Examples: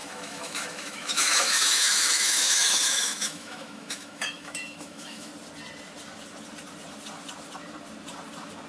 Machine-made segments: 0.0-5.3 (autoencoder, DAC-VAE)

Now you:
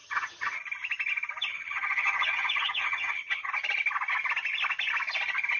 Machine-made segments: 0.0-0.6 (vocoder, HiFi-GAN); 1.5-3.5

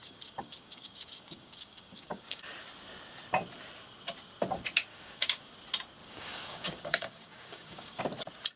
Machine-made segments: 0.0-2.4 (codec, DAC); 4.9-5.5; 6.0-8.0

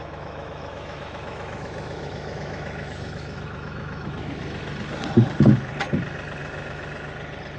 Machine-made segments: 0.0-4.4 (autoencoder, DAC-VAE); 6.4-7.1

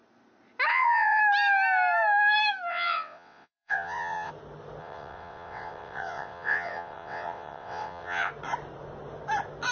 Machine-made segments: 0.7-1.2 (vocoder, WaveNeXt); 2.7-4.3; 4.8-8.3

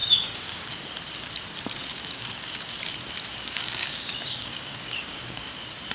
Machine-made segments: 0.0-0.8 (codec, DAC); 1.9-2.7; 3.3-5.5